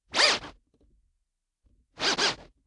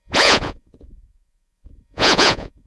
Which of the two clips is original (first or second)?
first